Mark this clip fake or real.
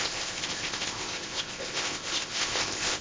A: fake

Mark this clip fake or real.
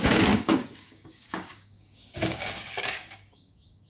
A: fake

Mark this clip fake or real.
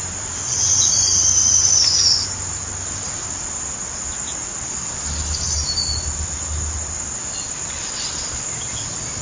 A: fake